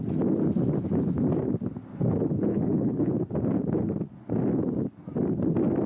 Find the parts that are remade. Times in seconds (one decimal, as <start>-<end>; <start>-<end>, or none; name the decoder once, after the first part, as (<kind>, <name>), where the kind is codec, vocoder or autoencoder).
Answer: 2.5-3.1 (codec, HILCodec)